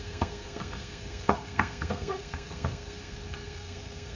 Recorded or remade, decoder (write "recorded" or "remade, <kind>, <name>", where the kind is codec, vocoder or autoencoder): remade, codec, SNAC